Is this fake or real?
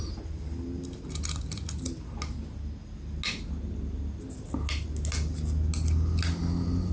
real